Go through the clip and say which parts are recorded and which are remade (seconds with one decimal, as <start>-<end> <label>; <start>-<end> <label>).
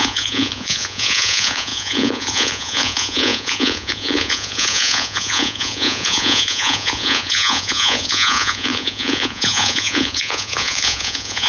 0.0-11.5 remade